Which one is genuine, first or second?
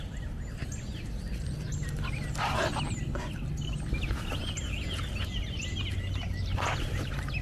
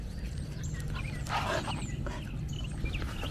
first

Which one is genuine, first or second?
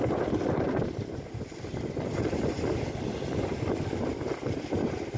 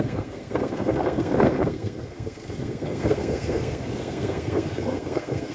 first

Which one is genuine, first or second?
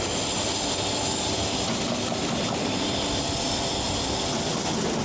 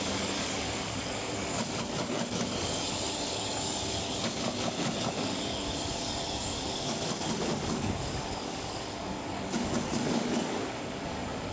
first